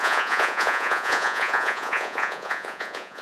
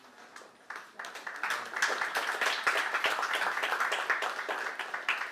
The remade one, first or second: first